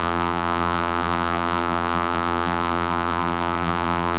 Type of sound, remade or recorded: remade